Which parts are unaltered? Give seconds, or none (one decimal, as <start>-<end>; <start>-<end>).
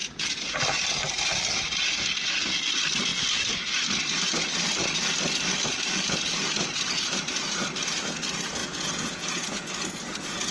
0.6-8.6; 9.7-10.5